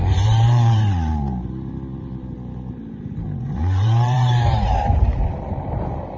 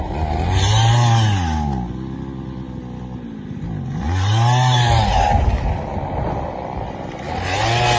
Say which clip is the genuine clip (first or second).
second